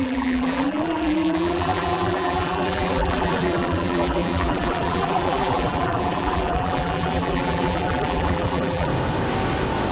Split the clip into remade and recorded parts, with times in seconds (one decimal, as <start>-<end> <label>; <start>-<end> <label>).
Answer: 0.0-8.9 remade; 8.9-9.9 recorded

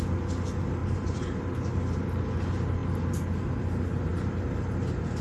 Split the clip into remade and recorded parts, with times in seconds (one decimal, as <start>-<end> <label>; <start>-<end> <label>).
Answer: 0.0-0.8 recorded; 0.8-1.4 remade; 1.4-5.2 recorded

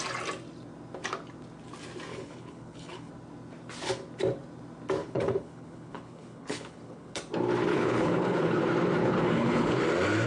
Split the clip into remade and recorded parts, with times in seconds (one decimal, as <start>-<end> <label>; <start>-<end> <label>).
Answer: 0.0-2.1 recorded; 2.1-3.1 remade; 3.1-5.0 recorded; 5.0-7.2 remade; 7.2-7.7 recorded; 7.7-8.6 remade; 8.6-9.0 recorded; 9.0-9.8 remade; 9.8-10.3 recorded

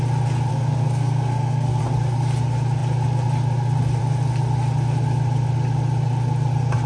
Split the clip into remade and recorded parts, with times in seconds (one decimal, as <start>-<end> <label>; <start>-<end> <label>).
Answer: 0.0-0.5 recorded; 0.5-1.8 remade; 1.8-6.9 recorded

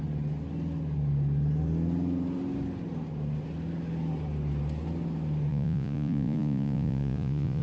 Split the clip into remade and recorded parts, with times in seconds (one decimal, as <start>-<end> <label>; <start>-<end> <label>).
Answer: 0.0-5.5 recorded; 5.5-7.6 remade